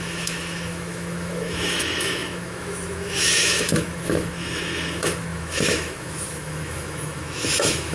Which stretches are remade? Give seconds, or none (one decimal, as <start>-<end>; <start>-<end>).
0.0-7.9